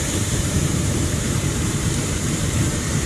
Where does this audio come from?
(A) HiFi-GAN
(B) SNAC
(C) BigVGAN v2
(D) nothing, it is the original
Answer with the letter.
C